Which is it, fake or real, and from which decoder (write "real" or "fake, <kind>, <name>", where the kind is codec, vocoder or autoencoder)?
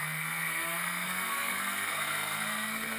fake, codec, SNAC